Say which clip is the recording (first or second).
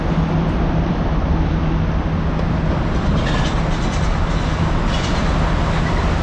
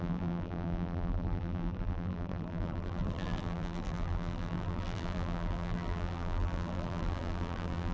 first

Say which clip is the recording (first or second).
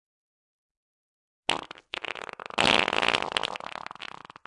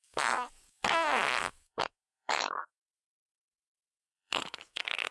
first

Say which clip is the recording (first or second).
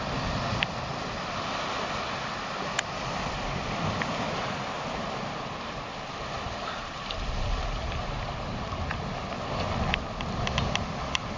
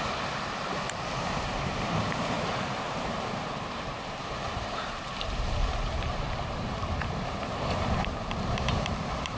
first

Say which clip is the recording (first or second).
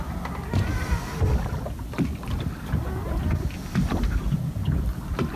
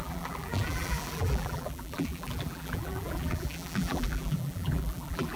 first